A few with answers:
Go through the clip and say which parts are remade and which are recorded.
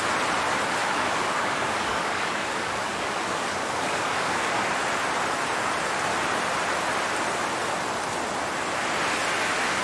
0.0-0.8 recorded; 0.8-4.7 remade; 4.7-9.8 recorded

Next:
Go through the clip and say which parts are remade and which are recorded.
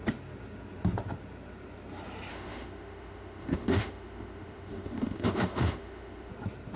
0.0-2.3 recorded; 2.3-6.3 remade; 6.3-6.8 recorded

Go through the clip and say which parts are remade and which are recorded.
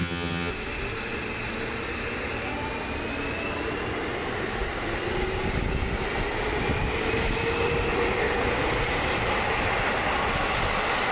0.0-0.5 remade; 0.5-11.1 recorded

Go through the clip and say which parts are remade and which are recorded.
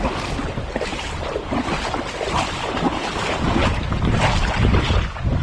0.0-0.9 recorded; 0.9-1.5 remade; 1.5-3.0 recorded; 3.0-4.2 remade; 4.2-5.4 recorded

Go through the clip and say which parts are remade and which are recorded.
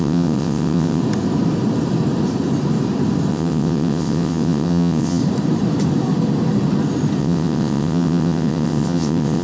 0.0-1.0 remade; 1.0-3.3 recorded; 3.3-5.2 remade; 5.2-7.2 recorded; 7.2-9.4 remade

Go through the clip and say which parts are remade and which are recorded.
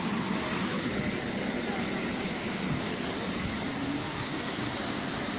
0.0-4.0 recorded; 4.0-4.6 remade; 4.6-5.4 recorded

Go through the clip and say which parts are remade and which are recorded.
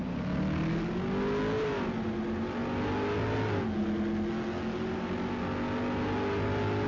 0.0-6.9 recorded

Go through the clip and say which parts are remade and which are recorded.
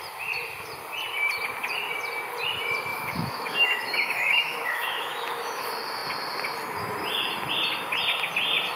0.0-2.9 recorded; 2.9-5.6 remade; 5.6-8.8 recorded